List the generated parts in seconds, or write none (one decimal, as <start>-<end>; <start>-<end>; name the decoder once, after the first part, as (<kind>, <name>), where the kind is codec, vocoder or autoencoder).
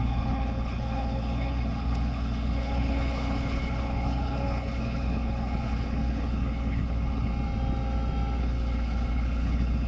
0.0-7.3 (codec, HILCodec); 8.4-9.9